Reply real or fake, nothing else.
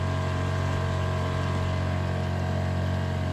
real